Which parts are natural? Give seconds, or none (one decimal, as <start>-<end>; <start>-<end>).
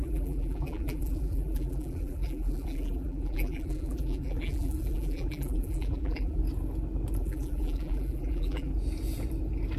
6.4-7.2; 8.7-9.8